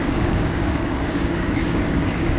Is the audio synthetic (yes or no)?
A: yes